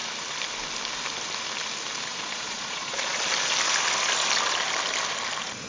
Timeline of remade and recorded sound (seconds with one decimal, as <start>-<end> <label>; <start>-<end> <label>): 0.0-2.1 recorded; 2.1-3.2 remade; 3.2-5.7 recorded